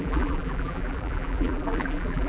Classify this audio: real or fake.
fake